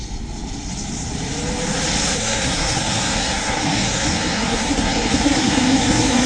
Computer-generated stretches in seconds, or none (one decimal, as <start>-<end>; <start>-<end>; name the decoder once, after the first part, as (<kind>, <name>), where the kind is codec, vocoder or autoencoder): 2.2-6.3 (codec, SNAC)